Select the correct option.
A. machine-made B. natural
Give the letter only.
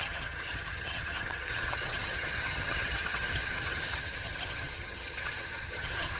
A